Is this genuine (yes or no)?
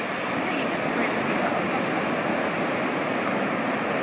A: yes